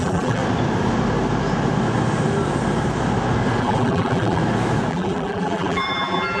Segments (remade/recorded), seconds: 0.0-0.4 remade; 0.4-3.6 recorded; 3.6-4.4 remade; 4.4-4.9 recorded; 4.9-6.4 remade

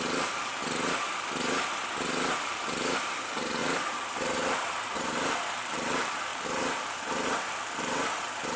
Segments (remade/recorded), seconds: 0.0-0.6 remade; 0.6-2.4 recorded; 2.4-8.6 remade

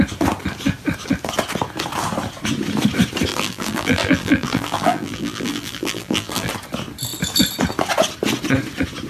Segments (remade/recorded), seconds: 0.0-3.3 recorded; 3.3-6.5 remade; 6.5-9.1 recorded

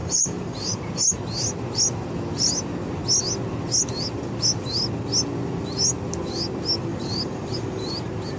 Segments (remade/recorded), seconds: 0.0-0.8 remade; 0.8-6.9 recorded; 6.9-7.9 remade; 7.9-8.4 recorded